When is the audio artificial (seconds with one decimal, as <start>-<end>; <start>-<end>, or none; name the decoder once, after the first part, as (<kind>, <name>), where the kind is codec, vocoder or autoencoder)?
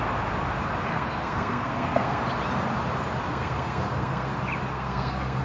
0.9-2.2 (codec, SNAC); 3.3-4.3; 4.7-5.4